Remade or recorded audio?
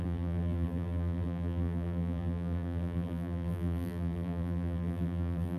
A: remade